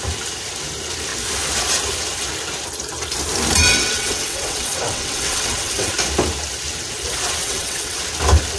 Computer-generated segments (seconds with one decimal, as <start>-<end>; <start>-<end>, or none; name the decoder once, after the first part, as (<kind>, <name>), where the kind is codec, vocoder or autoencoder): 3.6-5.9 (vocoder, WaveNeXt); 7.4-8.0